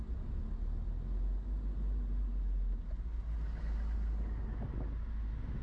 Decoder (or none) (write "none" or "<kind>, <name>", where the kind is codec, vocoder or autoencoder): none